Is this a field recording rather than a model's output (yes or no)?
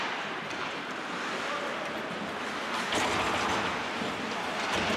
yes